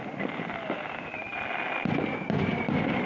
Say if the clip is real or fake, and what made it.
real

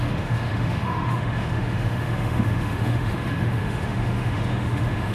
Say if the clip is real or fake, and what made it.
fake, autoencoder, DAC-VAE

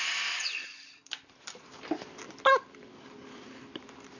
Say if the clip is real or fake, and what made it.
fake, vocoder, BigVGAN v2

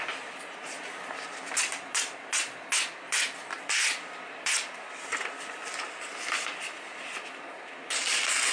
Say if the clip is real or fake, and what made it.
real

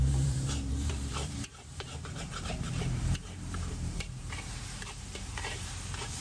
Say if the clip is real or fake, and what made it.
fake, vocoder, BigVGAN v2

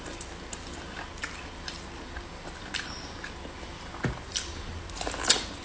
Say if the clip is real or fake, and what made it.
real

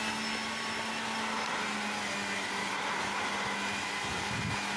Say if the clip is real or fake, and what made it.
real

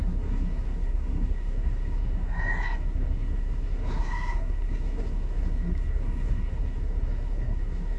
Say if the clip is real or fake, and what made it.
fake, codec, SNAC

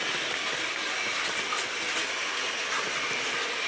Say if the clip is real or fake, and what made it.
real